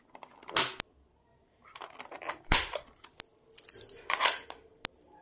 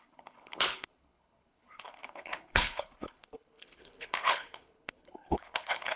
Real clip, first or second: first